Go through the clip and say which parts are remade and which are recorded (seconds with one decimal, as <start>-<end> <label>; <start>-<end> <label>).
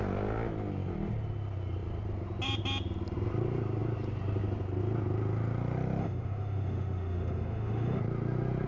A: 0.0-6.0 recorded; 6.0-8.0 remade; 8.0-8.7 recorded